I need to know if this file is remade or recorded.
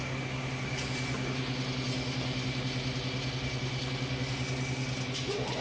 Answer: recorded